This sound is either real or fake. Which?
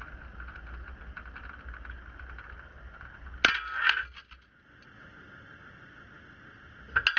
real